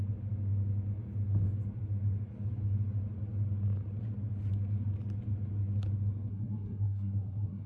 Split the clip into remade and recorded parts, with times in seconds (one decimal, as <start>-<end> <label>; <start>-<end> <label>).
0.0-6.3 recorded; 6.3-7.7 remade